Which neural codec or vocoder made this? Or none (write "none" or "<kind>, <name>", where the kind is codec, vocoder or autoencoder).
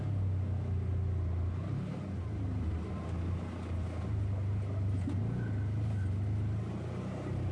none